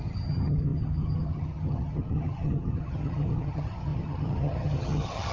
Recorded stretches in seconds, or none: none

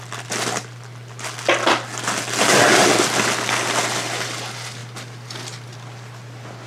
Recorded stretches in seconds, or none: 0.0-6.7